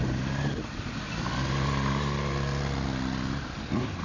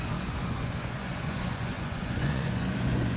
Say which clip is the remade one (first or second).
second